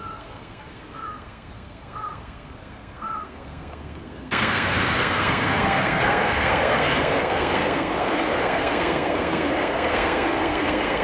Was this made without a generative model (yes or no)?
no